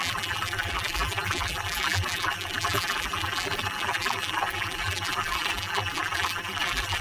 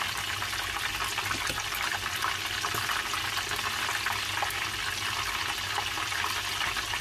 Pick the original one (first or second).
second